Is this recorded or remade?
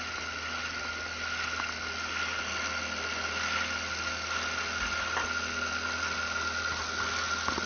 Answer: recorded